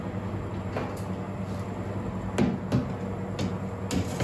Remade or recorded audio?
recorded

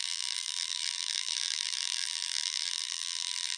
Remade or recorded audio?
remade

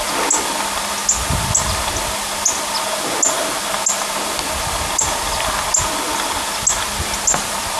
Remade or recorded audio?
recorded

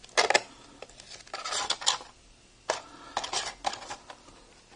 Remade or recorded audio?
recorded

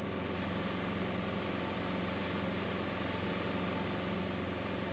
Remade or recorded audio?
recorded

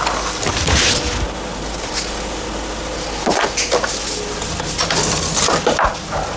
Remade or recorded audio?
recorded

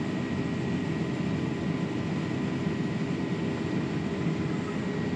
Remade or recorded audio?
recorded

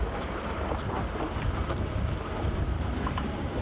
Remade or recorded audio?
remade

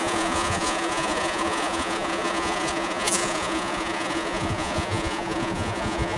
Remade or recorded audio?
remade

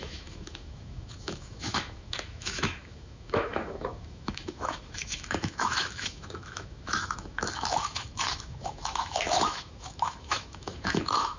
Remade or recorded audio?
remade